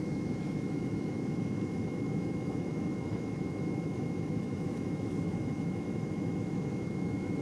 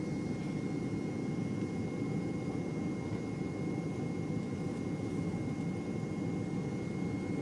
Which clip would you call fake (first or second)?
first